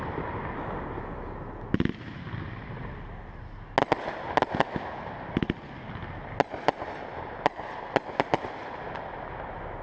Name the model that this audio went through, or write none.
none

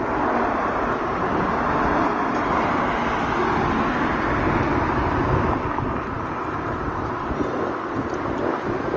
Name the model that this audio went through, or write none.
none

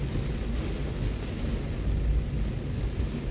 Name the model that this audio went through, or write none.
none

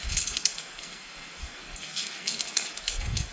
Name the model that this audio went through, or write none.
codec, SNAC